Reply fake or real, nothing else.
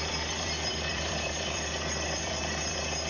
fake